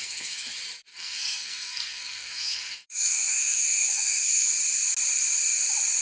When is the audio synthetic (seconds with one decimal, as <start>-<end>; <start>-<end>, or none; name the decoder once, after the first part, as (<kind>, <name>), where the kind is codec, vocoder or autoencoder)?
0.0-0.5 (codec, SNAC); 0.9-4.5